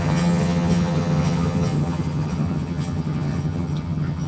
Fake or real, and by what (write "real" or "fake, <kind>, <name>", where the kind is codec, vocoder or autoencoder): fake, vocoder, HiFi-GAN